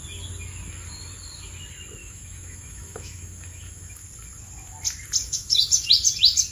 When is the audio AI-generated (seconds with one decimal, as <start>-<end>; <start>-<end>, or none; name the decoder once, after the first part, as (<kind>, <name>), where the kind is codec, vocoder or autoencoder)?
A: 2.0-4.0 (autoencoder, DAC-VAE); 5.2-5.9